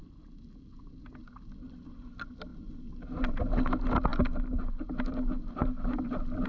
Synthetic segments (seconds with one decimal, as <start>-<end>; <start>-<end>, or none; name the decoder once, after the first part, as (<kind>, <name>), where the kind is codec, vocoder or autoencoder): none